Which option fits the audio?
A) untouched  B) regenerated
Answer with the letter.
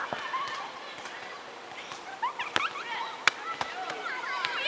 B